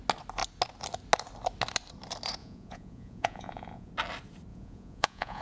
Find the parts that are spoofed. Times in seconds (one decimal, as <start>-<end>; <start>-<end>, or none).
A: 2.4-3.9; 4.5-5.4